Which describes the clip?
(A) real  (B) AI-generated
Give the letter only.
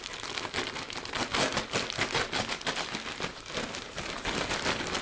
A